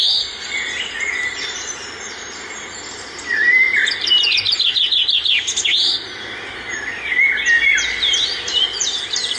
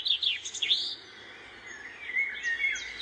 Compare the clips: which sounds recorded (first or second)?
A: second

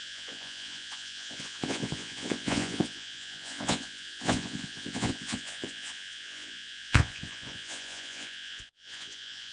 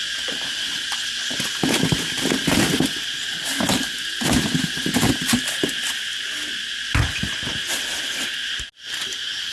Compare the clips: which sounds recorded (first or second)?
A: second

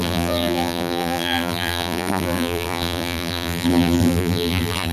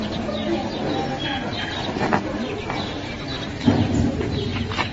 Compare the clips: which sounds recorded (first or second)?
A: second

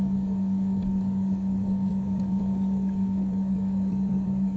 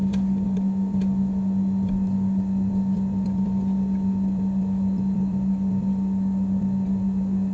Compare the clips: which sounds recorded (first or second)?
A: second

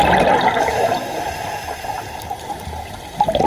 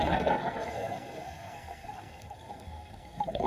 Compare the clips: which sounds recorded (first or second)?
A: first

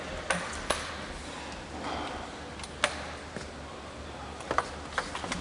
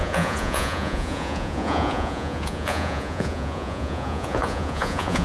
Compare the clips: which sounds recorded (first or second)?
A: first